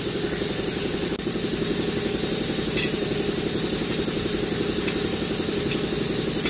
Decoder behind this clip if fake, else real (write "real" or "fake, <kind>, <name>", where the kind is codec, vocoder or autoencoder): real